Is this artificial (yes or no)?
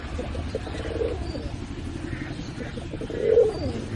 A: no